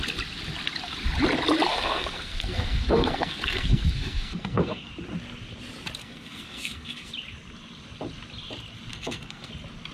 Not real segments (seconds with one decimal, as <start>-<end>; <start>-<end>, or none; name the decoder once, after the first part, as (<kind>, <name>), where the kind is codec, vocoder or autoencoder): 1.7-4.9 (codec, SNAC); 6.0-7.1; 8.9-9.5